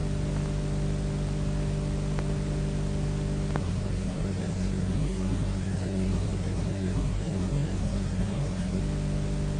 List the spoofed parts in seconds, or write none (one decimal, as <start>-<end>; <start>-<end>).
3.6-8.8